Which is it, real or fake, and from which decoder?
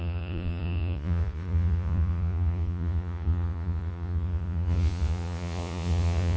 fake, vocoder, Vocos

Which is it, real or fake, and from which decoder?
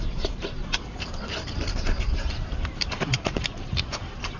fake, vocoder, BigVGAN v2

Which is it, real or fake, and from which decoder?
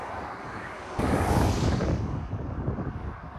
fake, codec, DAC